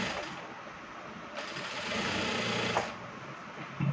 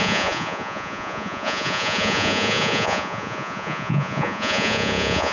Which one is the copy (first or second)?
second